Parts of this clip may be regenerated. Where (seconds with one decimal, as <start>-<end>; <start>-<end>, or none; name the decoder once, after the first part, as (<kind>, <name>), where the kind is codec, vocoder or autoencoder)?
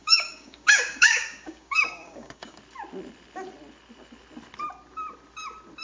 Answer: 0.0-2.6 (codec, DAC)